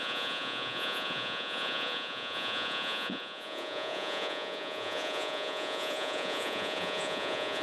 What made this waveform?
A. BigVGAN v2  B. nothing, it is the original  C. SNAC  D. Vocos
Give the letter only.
D